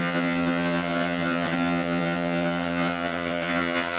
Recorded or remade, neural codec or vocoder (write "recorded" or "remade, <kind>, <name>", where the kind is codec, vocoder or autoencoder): remade, vocoder, HiFi-GAN